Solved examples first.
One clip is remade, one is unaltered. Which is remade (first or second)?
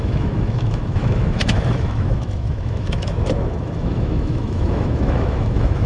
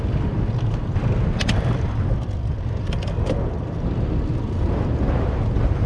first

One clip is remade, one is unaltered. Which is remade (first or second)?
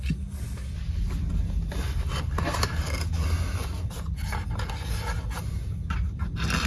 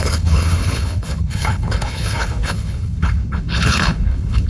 second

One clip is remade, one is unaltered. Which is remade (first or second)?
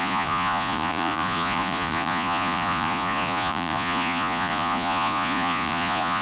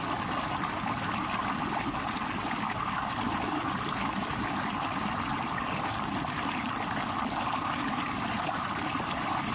first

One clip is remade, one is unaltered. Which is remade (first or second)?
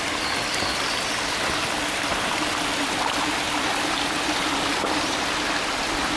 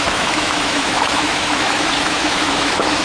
second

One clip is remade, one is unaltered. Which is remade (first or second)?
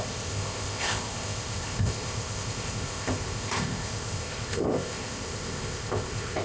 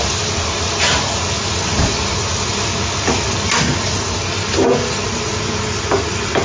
first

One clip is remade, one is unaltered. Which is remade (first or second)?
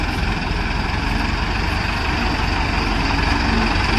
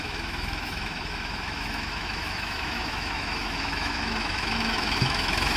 second